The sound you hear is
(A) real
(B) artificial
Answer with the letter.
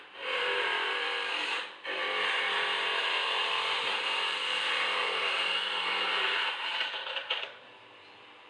B